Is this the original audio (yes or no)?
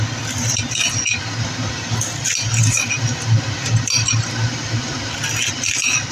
yes